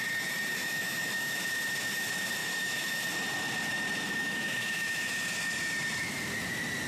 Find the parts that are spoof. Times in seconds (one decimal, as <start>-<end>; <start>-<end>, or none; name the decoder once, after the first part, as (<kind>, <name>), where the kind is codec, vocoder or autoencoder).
0.6-1.4 (autoencoder, DAC-VAE); 2.4-3.0; 4.2-5.1